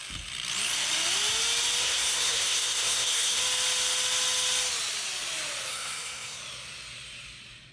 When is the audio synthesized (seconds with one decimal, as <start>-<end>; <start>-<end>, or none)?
1.8-3.4; 5.7-6.4